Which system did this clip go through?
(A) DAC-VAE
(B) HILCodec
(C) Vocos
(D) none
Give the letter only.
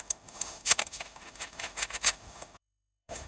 A